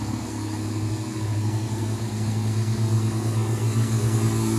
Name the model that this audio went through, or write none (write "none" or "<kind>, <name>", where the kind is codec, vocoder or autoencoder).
codec, SNAC